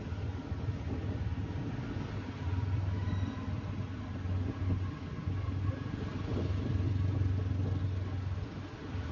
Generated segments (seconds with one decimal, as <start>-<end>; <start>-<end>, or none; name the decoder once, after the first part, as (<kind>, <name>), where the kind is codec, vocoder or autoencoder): none